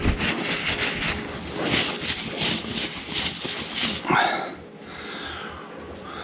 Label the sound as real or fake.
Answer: real